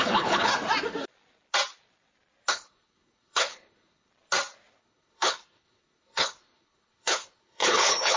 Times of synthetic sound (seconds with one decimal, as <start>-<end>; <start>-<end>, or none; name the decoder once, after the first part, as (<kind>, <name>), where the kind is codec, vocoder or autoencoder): 0.0-0.5 (codec, HILCodec); 2.5-4.1; 4.8-8.2